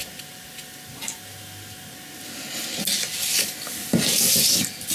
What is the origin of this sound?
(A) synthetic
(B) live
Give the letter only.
B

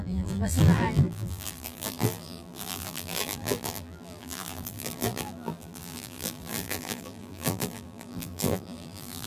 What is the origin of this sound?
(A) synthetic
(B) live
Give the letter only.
A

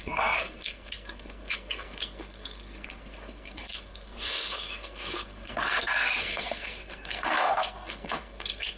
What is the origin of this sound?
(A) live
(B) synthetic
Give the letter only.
B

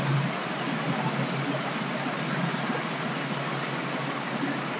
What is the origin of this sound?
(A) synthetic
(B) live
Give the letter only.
B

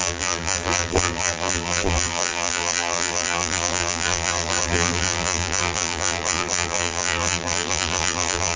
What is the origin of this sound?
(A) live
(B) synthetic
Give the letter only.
B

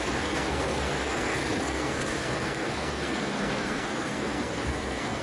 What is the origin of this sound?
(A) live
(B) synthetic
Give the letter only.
B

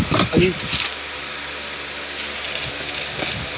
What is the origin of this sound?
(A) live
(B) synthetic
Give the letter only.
A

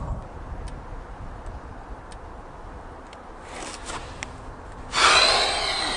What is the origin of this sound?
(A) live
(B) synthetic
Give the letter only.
A